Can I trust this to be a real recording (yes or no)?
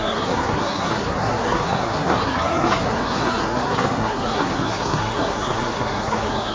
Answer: no